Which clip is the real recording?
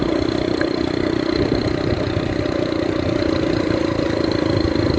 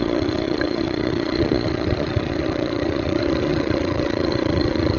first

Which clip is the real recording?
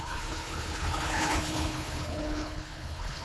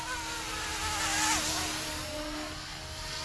second